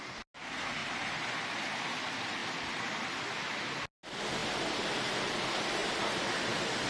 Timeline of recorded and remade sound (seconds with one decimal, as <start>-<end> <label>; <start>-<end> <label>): 0.0-5.8 recorded; 5.8-6.4 remade; 6.4-6.9 recorded